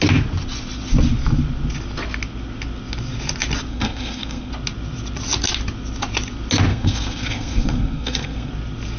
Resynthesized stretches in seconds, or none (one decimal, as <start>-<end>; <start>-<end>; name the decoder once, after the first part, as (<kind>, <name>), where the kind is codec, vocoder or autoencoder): 3.7-4.5 (codec, SNAC); 6.7-8.5